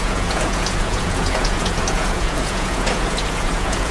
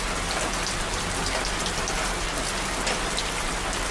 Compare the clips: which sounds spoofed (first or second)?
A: first